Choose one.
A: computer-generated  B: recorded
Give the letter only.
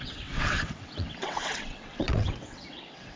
A